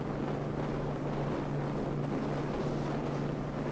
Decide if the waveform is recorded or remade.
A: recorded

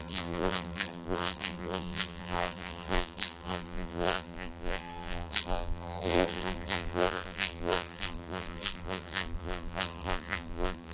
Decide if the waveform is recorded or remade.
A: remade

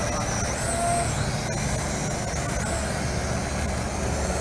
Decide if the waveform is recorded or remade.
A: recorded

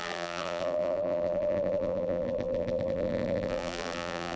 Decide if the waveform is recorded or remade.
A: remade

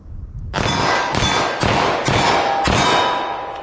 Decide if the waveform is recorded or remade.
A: recorded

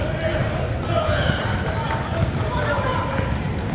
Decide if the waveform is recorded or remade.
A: recorded